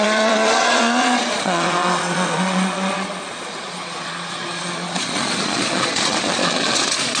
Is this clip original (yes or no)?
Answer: no